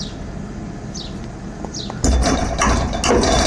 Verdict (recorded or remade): recorded